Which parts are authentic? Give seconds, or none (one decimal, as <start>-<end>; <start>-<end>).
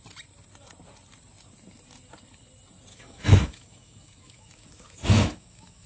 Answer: 0.0-2.9